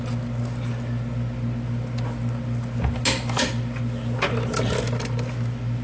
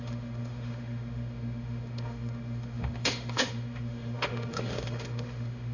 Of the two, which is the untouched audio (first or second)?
first